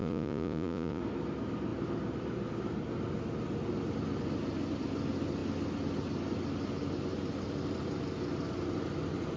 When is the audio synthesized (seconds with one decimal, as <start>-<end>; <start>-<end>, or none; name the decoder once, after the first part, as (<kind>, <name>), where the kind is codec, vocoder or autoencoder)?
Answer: 0.0-1.0 (vocoder, Vocos)

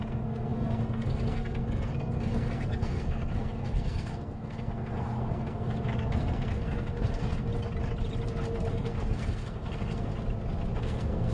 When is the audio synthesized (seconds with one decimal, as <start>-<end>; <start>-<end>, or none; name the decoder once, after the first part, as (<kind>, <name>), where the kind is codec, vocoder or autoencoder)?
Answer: 0.0-7.5 (codec, SNAC); 8.7-10.1; 10.8-11.3

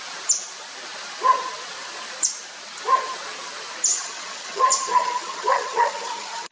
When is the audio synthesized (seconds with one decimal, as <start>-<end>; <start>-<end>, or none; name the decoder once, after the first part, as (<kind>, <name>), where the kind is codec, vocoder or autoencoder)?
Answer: 3.9-6.5 (vocoder, HiFi-GAN)

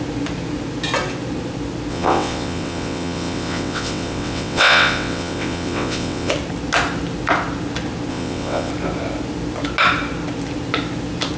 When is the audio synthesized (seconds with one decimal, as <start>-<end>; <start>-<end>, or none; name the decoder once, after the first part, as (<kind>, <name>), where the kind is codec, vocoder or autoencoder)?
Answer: 1.9-6.3 (vocoder, WaveNeXt); 8.1-8.7